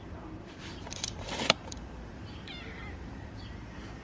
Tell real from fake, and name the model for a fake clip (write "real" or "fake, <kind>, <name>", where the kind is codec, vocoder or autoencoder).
fake, vocoder, BigVGAN v2